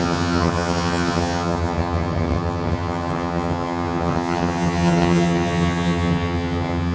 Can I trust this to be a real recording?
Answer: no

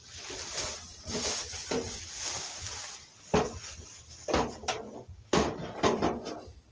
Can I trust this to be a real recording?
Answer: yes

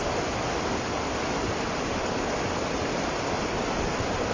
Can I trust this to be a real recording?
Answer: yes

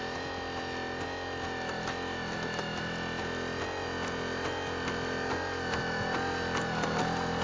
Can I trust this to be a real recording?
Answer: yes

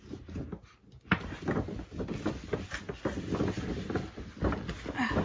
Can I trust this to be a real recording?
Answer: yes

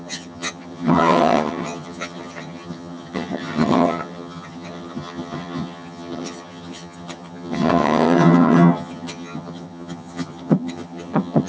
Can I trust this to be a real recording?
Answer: no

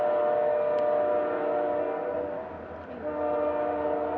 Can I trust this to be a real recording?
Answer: yes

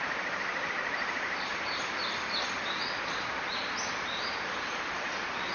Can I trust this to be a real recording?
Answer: yes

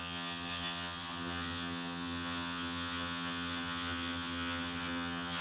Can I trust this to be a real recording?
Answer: no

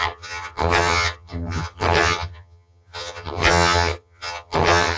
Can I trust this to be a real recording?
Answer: no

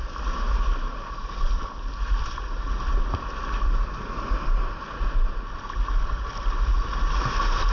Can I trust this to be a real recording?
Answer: yes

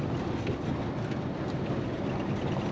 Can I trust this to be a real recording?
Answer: yes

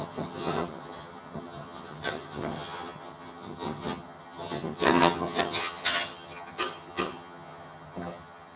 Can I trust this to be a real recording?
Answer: no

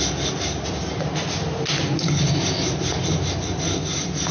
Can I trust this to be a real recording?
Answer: yes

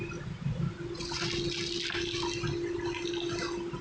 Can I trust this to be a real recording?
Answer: yes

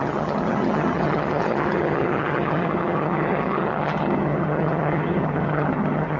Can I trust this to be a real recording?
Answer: no